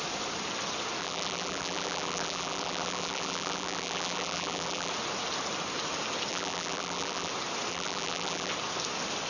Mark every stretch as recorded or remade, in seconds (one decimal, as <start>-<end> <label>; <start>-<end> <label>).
0.0-1.0 recorded; 1.0-4.9 remade; 4.9-6.3 recorded; 6.3-7.3 remade; 7.3-7.7 recorded; 7.7-8.5 remade; 8.5-9.3 recorded